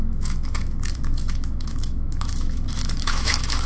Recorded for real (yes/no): no